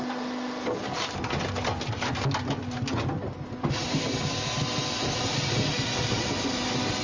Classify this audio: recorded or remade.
recorded